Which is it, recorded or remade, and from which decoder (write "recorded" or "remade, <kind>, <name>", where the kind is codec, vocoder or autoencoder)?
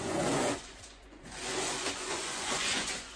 remade, vocoder, Vocos